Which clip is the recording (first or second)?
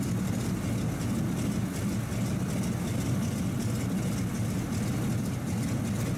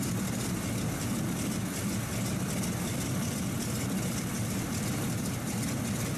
first